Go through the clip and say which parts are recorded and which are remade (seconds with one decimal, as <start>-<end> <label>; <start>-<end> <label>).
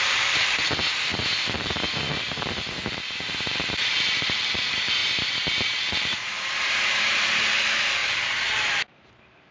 0.0-9.5 remade